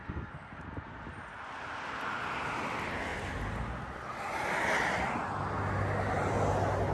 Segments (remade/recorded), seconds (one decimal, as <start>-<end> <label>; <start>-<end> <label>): 0.0-0.6 remade; 0.6-6.9 recorded